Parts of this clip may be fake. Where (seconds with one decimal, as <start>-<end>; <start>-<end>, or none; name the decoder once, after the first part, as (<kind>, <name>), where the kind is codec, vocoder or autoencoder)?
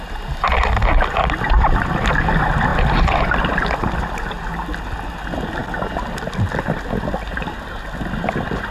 2.7-3.7 (vocoder, BigVGAN v2); 5.6-8.7